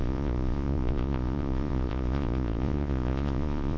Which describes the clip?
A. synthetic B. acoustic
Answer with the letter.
A